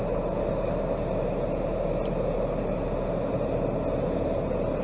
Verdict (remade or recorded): recorded